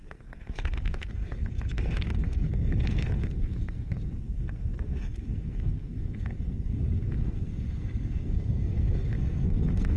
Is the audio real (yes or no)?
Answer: no